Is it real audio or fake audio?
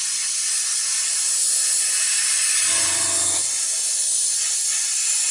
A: real